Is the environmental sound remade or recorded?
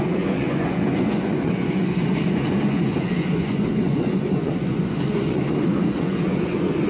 remade